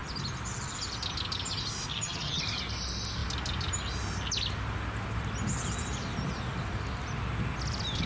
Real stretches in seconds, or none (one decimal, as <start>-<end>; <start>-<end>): 0.0-1.9; 2.4-8.1